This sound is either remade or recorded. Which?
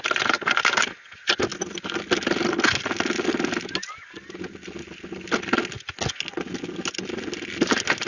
recorded